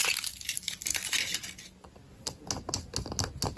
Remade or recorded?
recorded